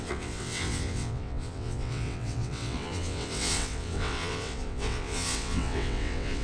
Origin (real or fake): fake